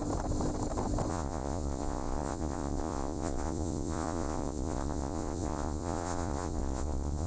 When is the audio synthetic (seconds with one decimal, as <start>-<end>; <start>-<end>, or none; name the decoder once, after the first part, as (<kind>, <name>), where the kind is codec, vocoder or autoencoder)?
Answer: 1.1-7.3 (vocoder, Vocos)